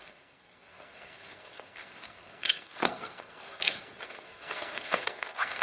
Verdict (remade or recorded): remade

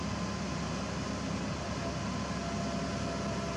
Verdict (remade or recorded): recorded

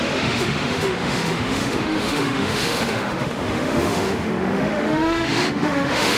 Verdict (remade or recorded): remade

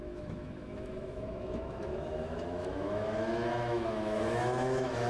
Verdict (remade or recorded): remade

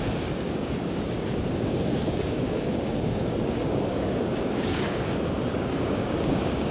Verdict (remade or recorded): remade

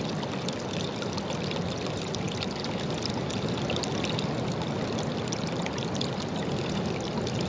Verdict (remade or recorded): recorded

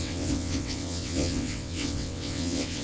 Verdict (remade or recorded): remade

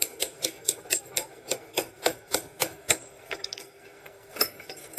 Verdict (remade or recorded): remade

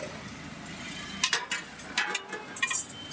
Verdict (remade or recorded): recorded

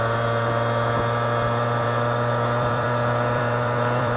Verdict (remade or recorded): remade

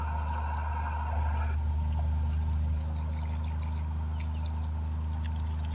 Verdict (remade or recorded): recorded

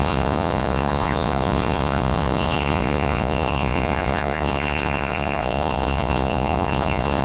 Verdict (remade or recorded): remade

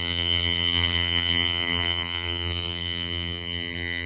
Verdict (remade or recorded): remade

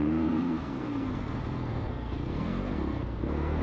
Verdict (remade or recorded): remade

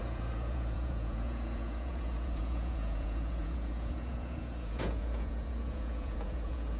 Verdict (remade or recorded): remade